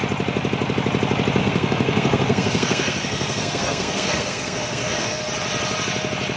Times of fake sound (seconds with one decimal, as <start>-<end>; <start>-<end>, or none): 1.4-5.2